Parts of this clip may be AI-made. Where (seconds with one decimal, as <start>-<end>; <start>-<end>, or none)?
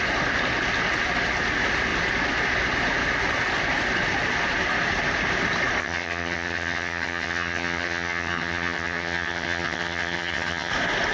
5.8-10.7